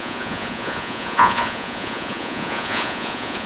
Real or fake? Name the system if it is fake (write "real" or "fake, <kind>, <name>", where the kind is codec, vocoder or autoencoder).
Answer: fake, vocoder, Vocos